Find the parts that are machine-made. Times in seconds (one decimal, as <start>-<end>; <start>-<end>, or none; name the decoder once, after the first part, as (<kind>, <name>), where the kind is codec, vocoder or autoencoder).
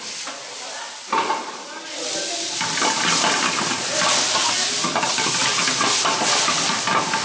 none